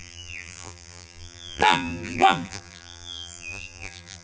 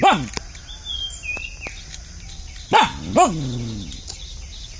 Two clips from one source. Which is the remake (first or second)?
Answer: first